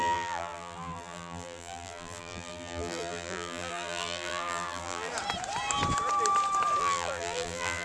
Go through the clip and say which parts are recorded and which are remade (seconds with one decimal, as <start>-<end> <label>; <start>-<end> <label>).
0.0-5.1 remade; 5.1-6.8 recorded; 6.8-7.8 remade